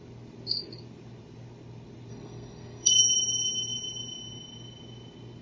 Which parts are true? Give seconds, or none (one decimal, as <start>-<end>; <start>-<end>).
0.0-2.1; 2.9-5.4

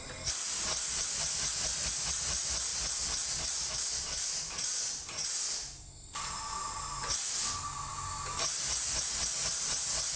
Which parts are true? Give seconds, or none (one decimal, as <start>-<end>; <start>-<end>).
0.0-10.2